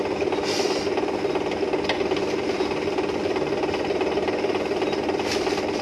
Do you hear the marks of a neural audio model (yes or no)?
no